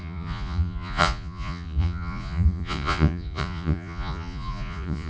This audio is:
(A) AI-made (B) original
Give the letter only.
A